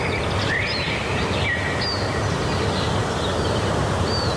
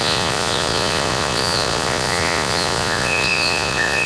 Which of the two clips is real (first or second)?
first